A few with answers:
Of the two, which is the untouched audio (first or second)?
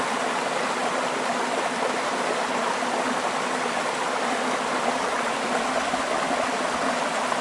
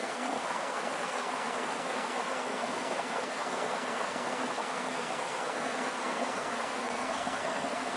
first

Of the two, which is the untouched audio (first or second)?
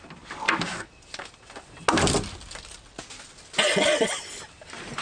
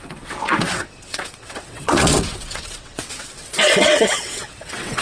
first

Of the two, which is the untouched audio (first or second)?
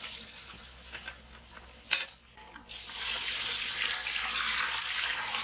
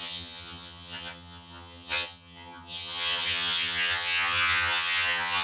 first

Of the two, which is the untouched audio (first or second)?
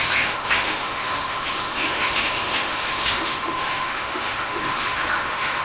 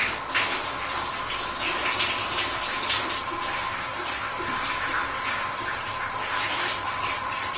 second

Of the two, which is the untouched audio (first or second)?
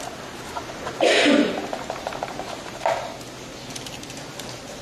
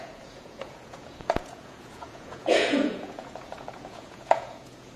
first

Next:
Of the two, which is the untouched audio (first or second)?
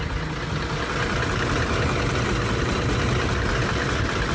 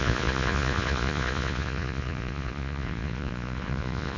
first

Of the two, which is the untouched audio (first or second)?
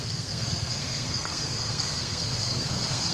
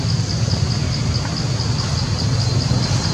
second